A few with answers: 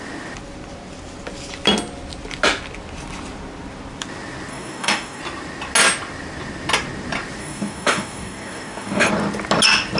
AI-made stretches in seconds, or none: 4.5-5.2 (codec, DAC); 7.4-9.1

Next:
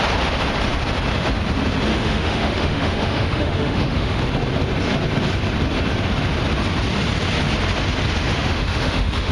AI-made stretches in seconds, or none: 1.9-4.2 (autoencoder, DAC-VAE); 8.2-9.3

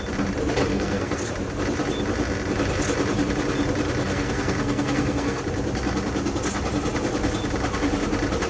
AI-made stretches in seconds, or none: 0.7-1.3 (codec, SNAC); 4.0-5.4

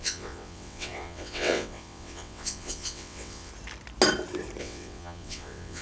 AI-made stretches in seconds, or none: 0.0-3.5 (vocoder, WaveNeXt); 4.6-5.8

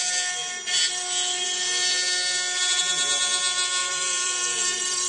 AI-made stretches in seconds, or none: 3.8-5.1 (vocoder, BigVGAN v2)

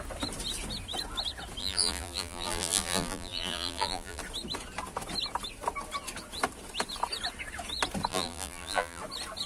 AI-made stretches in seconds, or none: 1.6-4.2 (vocoder, BigVGAN v2); 8.1-9.0

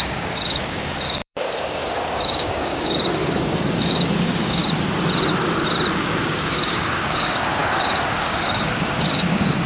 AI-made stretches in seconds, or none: 0.0-4.6 (codec, DAC); 5.9-9.7

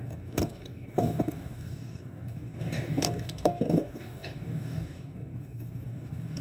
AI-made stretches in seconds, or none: 0.0-6.4 (codec, DAC)